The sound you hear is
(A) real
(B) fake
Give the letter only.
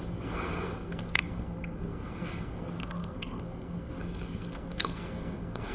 B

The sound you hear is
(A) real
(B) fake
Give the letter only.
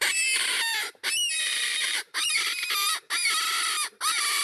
B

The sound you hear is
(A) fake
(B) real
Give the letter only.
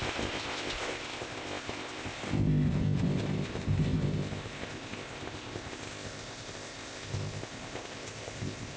A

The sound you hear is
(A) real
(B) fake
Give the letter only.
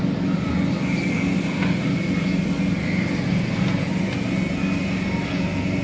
A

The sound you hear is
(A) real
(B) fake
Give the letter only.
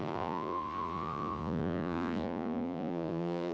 B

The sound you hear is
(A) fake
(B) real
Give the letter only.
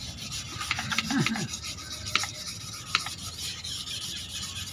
A